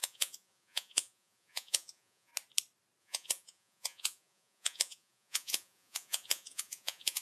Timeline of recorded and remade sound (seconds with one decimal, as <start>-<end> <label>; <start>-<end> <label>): 0.0-2.3 remade; 2.3-3.0 recorded; 3.0-7.2 remade